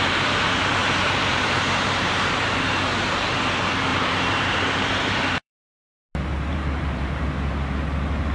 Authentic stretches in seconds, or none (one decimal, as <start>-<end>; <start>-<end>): 0.0-0.8; 2.7-3.9; 5.5-6.5; 7.2-8.3